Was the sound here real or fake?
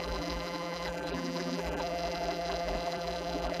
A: fake